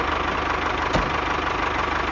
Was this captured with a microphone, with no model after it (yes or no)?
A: yes